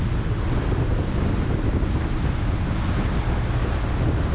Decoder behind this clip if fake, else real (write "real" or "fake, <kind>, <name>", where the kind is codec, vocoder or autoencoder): real